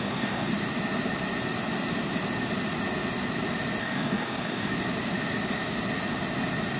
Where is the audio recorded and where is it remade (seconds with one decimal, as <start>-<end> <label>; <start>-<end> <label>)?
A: 0.0-0.5 remade; 0.5-3.8 recorded; 3.8-4.7 remade; 4.7-6.8 recorded